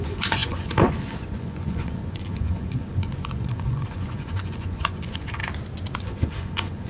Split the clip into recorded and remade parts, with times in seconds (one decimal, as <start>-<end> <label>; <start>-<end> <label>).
0.0-5.4 remade; 5.4-6.0 recorded; 6.0-6.9 remade